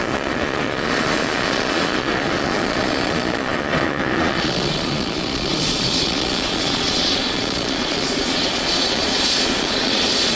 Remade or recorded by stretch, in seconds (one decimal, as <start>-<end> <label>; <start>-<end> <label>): 0.0-10.4 remade